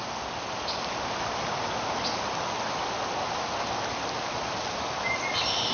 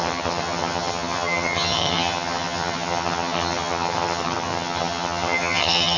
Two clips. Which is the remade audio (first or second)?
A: second